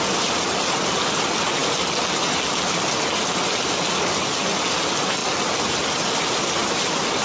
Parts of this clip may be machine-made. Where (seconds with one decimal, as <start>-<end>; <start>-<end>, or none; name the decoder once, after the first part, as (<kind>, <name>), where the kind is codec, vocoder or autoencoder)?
none